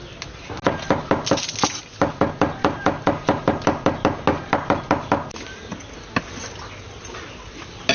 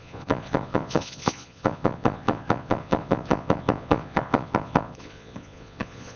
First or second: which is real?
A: first